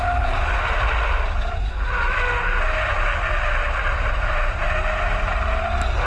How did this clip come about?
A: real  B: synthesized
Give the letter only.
A